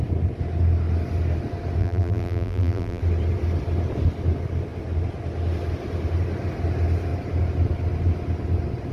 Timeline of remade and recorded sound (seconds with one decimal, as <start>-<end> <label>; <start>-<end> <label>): 0.0-1.8 recorded; 1.8-3.0 remade; 3.0-8.9 recorded